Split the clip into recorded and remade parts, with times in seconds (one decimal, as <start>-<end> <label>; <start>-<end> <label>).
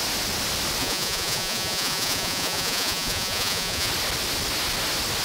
0.0-0.8 recorded; 0.8-3.9 remade; 3.9-5.2 recorded